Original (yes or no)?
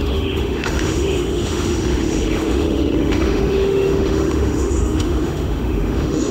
no